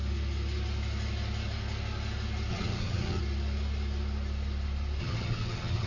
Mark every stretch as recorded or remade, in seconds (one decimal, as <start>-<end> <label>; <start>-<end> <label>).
0.0-2.5 recorded; 2.5-3.2 remade; 3.2-5.0 recorded; 5.0-5.9 remade